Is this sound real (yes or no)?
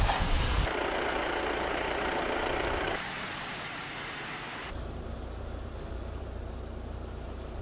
no